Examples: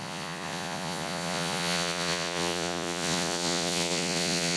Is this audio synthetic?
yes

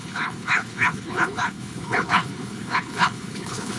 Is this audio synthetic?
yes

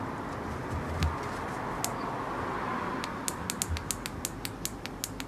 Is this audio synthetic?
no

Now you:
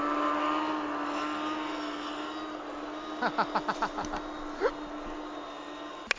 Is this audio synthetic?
no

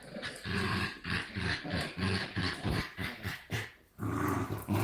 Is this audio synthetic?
yes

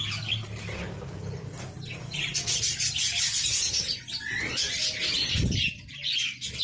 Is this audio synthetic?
no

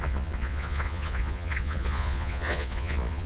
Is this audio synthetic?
yes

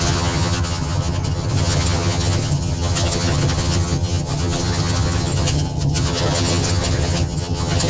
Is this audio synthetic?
yes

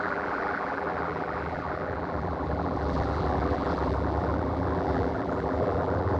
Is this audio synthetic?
yes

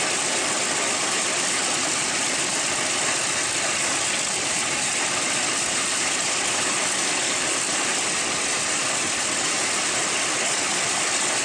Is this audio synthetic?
no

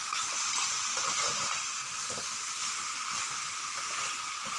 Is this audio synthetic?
no